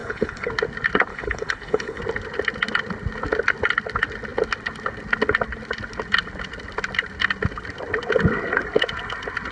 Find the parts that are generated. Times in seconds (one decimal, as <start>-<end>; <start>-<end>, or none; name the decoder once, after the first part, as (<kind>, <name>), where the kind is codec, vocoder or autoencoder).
0.0-0.5 (codec, HILCodec); 1.1-2.0